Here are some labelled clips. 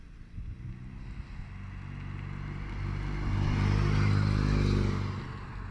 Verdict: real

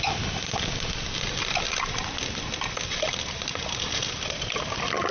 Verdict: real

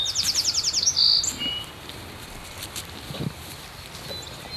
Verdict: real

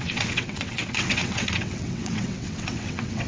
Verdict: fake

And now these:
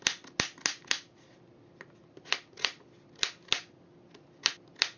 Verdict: real